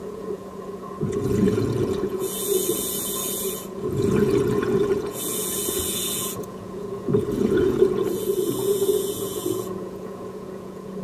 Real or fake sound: fake